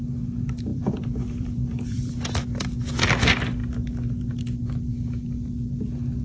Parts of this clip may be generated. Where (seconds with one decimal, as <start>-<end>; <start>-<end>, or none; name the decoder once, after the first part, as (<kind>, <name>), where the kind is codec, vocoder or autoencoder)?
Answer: 0.7-2.1 (vocoder, BigVGAN v2)